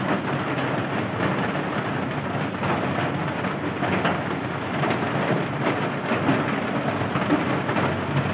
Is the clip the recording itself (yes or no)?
yes